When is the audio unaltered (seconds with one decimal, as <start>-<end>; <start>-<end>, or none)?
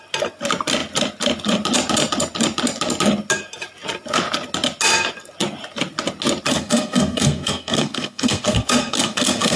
0.0-6.5